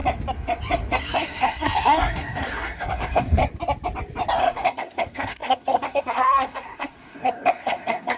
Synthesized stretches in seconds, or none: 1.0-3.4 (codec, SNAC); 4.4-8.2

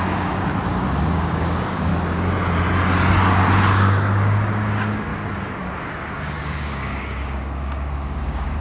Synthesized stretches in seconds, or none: 0.0-0.5 (codec, DAC); 1.1-1.9; 3.7-5.1; 6.1-8.6

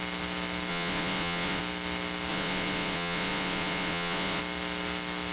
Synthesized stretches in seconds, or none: 0.7-1.6 (vocoder, Vocos); 2.3-4.4